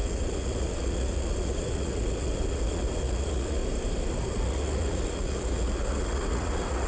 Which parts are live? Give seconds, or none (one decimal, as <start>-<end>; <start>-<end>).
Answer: 3.6-4.3